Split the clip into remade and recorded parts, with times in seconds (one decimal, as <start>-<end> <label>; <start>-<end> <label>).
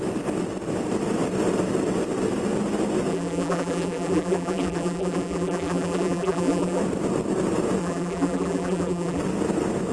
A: 0.0-3.1 recorded; 3.1-6.8 remade; 6.8-7.8 recorded; 7.8-9.2 remade; 9.2-9.9 recorded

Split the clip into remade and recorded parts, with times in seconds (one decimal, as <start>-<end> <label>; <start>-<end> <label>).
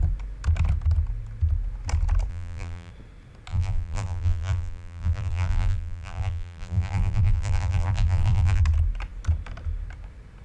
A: 0.0-2.3 recorded; 2.3-2.9 remade; 2.9-3.5 recorded; 3.5-8.6 remade; 8.6-10.4 recorded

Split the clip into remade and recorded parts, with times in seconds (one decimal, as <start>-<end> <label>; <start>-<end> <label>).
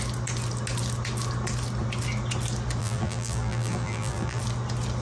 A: 0.0-2.8 recorded; 2.8-4.4 remade; 4.4-5.0 recorded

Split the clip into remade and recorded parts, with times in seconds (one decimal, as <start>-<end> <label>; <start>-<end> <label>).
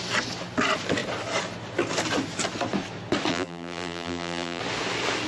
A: 0.0-3.3 recorded; 3.3-4.6 remade; 4.6-5.3 recorded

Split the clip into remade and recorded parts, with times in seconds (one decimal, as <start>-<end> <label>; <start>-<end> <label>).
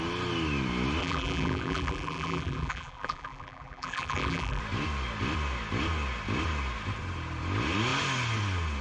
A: 0.0-1.0 recorded; 1.0-4.6 remade; 4.6-8.8 recorded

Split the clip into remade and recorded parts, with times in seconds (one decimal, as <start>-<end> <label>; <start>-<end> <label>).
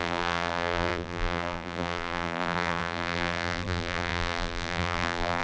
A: 0.0-5.4 remade